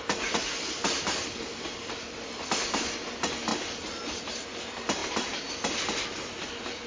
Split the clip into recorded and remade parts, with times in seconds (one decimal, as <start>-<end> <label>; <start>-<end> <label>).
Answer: 0.0-6.9 recorded